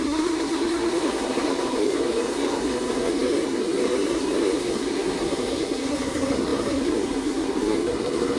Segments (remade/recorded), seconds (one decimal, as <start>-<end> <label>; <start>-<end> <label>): 0.0-8.4 remade